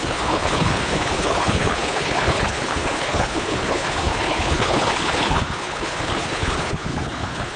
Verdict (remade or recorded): remade